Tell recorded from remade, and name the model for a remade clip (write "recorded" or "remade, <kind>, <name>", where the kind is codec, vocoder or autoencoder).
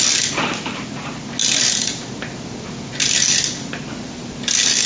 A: recorded